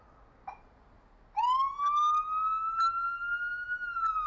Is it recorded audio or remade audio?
recorded